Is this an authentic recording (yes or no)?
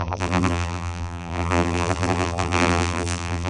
no